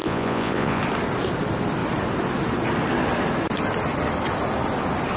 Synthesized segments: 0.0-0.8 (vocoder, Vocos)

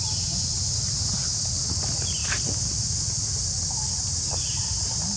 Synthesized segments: none